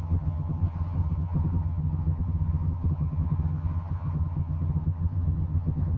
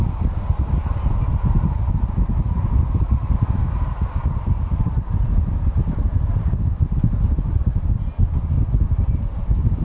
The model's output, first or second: first